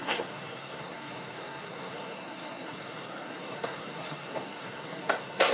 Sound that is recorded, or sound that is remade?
remade